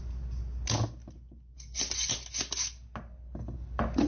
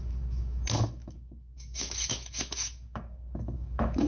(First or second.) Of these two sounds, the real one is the first